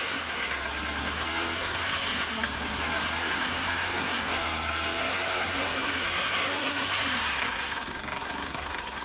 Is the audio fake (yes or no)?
yes